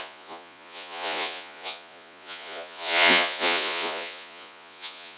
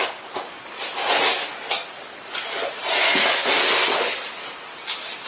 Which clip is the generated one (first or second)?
first